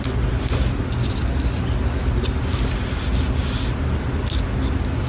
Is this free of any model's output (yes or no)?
yes